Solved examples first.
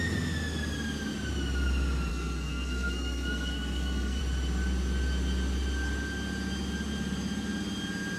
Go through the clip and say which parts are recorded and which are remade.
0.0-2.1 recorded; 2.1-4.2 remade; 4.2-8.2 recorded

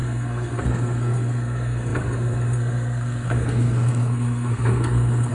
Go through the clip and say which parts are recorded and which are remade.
0.0-5.3 remade

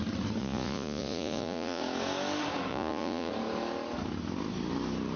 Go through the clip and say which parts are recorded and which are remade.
0.0-0.4 recorded; 0.4-1.8 remade; 1.8-2.7 recorded; 2.7-3.3 remade; 3.3-5.2 recorded

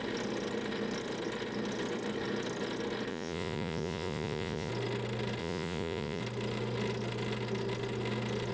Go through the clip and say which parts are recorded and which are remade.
0.0-3.1 recorded; 3.1-4.7 remade; 4.7-5.4 recorded; 5.4-6.2 remade; 6.2-8.5 recorded

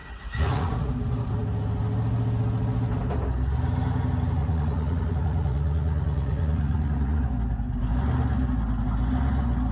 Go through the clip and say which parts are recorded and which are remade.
0.0-0.9 remade; 0.9-4.4 recorded; 4.4-7.2 remade; 7.2-9.7 recorded

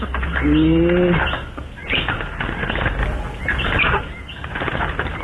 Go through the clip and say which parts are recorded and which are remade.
0.0-5.2 recorded

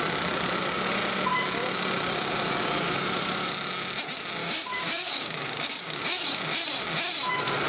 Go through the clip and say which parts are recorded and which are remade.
0.0-4.4 recorded; 4.4-6.4 remade; 6.4-7.7 recorded

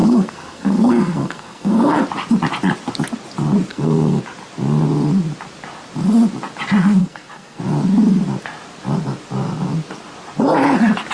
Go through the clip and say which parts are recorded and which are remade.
0.0-2.0 remade; 2.0-3.7 recorded; 3.7-4.2 remade; 4.2-7.0 recorded; 7.0-7.6 remade; 7.6-11.1 recorded